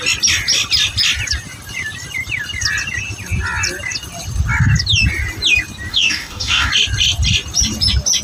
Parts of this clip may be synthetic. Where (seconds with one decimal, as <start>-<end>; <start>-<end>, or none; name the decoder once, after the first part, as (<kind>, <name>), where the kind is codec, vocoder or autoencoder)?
5.9-6.7 (codec, DAC)